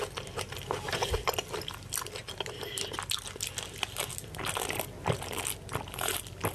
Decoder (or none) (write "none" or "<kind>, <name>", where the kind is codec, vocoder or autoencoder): none